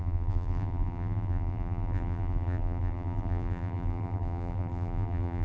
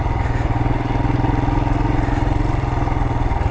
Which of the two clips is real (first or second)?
second